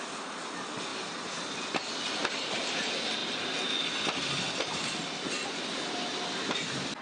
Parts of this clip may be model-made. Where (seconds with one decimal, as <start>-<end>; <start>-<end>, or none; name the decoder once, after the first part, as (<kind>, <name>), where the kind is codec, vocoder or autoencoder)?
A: none

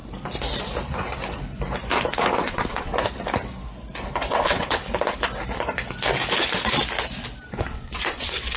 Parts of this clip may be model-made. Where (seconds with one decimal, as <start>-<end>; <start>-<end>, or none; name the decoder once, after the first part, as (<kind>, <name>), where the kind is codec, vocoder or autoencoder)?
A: 2.4-2.9 (vocoder, WaveNeXt); 4.3-4.8; 7.5-8.6

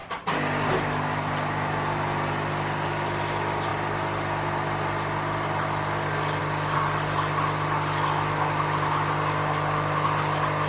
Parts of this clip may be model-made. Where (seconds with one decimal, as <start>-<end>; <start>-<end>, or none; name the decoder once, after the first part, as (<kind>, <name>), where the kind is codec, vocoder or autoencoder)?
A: none

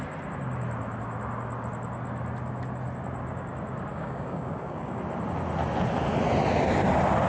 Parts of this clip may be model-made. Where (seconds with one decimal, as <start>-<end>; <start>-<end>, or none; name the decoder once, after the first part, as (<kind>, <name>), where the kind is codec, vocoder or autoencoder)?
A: 3.9-5.0 (codec, DAC)

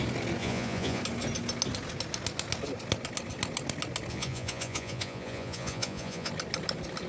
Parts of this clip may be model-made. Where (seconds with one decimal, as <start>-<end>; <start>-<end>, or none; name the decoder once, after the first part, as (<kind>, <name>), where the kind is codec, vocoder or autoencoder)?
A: 0.4-1.0 (vocoder, Vocos); 4.1-6.3

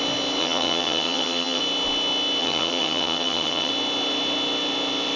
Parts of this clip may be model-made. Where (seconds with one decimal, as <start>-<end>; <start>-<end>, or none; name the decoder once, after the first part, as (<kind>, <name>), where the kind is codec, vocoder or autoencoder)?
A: 0.4-1.6 (vocoder, HiFi-GAN); 2.4-3.7

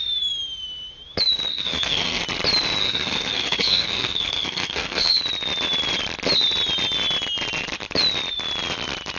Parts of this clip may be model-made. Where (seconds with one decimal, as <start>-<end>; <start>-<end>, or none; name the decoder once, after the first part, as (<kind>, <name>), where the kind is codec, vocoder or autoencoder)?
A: 1.5-2.2 (codec, SNAC); 2.8-5.2

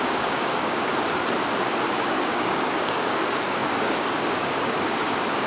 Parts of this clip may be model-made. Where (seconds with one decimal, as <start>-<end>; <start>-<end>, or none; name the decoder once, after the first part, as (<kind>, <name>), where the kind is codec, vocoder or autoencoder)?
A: 0.0-0.9 (codec, DAC); 1.6-5.5